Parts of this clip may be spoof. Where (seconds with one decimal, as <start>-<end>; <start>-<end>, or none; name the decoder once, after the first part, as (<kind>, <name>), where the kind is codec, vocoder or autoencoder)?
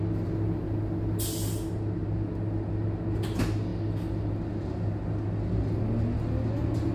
none